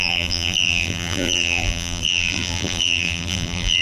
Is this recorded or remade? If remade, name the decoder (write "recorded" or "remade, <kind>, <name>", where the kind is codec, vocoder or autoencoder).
remade, vocoder, BigVGAN v2